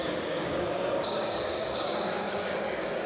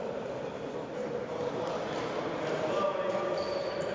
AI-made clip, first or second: first